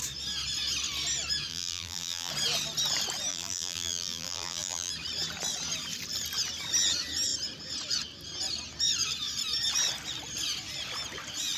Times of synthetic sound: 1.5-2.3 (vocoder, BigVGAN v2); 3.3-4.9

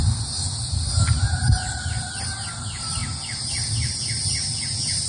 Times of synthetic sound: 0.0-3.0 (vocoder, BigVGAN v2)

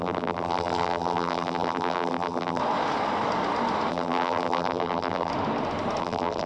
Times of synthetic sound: 0.0-2.6 (vocoder, BigVGAN v2); 3.9-5.3; 6.0-6.5

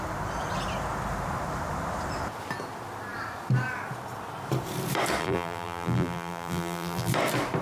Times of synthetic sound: 5.2-7.1 (vocoder, BigVGAN v2)

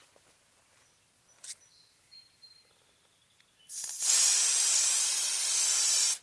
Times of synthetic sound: 0.0-3.2 (vocoder, BigVGAN v2); 5.5-6.2